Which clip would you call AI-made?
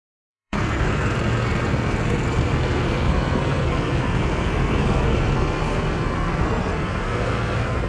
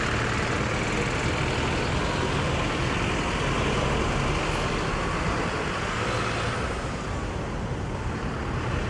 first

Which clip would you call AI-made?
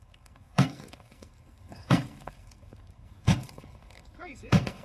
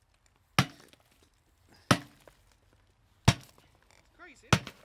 first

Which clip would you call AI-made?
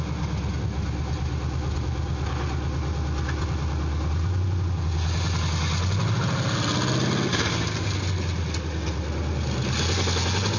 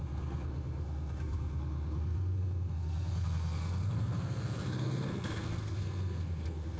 second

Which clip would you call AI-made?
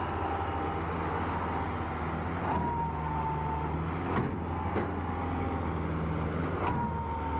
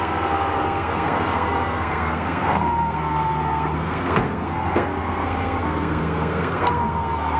second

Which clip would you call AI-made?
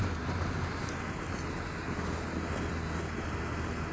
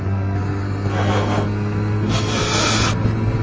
second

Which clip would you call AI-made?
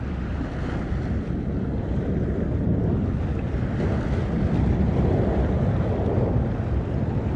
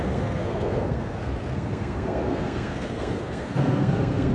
second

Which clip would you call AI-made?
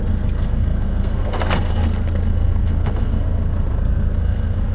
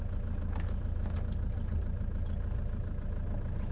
first